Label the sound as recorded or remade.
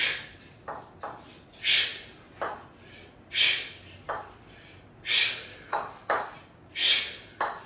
recorded